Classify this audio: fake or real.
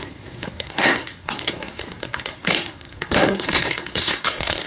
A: fake